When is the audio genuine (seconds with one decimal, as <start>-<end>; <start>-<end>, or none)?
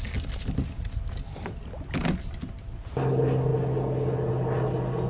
0.0-5.1